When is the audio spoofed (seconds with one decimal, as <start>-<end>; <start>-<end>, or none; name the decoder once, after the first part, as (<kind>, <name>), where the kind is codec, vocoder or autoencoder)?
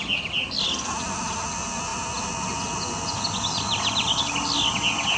none